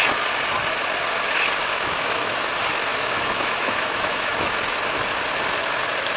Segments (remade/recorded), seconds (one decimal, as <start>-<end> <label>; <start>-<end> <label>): 0.0-1.6 recorded; 1.6-2.5 remade; 2.5-2.9 recorded; 2.9-4.5 remade; 4.5-6.2 recorded